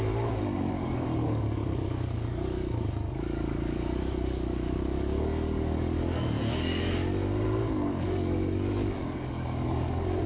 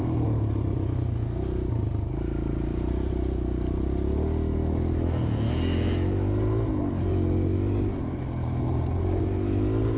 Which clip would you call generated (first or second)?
first